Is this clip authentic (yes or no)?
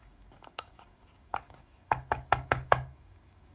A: no